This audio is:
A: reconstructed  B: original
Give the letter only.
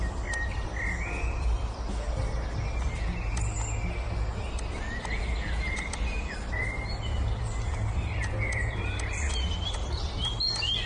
B